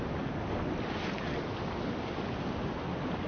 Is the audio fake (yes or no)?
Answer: no